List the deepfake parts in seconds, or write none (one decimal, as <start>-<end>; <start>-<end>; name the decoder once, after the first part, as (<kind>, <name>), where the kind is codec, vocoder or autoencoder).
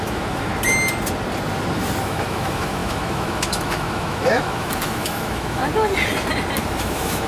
0.0-0.5 (autoencoder, DAC-VAE); 2.0-5.6; 6.8-7.3